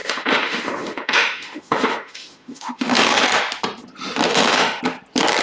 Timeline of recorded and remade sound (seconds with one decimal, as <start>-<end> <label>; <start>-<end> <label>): 0.0-3.2 remade; 3.2-4.3 recorded; 4.3-4.8 remade; 4.8-5.4 recorded